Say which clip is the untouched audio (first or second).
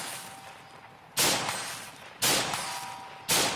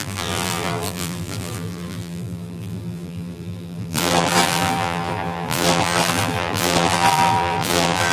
first